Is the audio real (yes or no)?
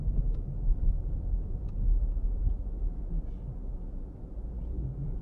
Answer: yes